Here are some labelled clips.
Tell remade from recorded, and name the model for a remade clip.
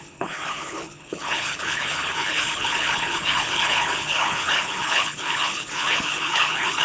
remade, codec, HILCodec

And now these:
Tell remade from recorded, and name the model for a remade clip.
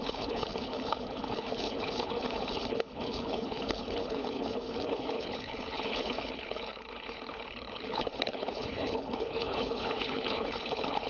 remade, codec, HILCodec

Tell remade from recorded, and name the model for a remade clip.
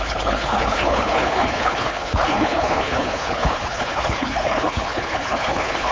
remade, codec, HILCodec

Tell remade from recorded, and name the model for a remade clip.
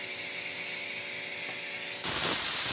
recorded